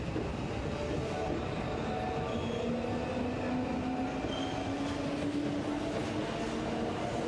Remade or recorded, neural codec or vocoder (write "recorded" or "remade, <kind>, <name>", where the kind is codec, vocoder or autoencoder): recorded